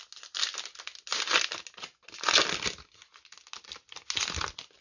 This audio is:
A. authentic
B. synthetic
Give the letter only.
A